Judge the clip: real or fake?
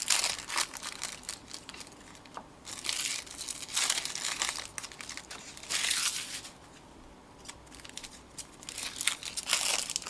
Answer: real